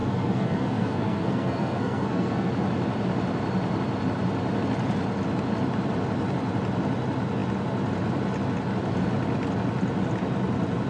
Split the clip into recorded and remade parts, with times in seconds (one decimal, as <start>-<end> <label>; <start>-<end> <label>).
0.0-2.5 remade; 2.5-10.9 recorded